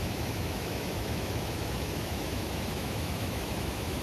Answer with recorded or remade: remade